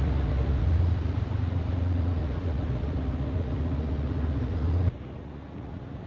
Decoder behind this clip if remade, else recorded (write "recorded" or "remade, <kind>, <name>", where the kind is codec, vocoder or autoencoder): remade, vocoder, Vocos